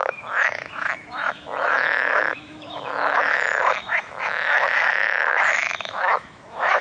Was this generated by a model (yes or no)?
yes